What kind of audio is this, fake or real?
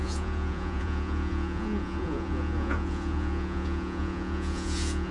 fake